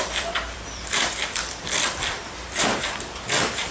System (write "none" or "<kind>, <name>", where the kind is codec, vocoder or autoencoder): vocoder, BigVGAN v2